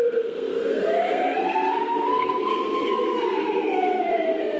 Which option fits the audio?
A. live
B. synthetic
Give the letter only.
B